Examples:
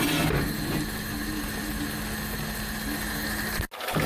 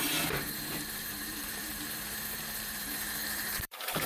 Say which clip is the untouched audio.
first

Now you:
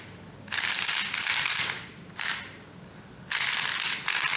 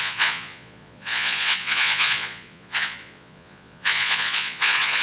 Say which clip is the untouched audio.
first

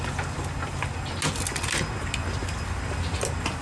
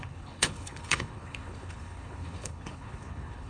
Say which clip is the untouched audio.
first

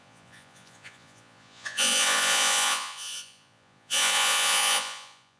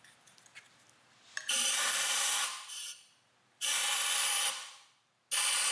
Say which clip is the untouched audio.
second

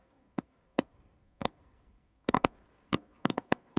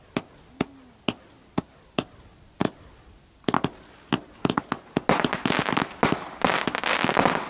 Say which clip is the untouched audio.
second